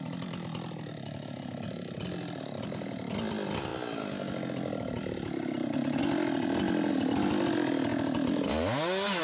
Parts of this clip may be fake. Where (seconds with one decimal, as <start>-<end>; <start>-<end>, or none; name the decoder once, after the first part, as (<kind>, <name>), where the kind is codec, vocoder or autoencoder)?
0.0-3.7 (vocoder, BigVGAN v2); 6.9-7.9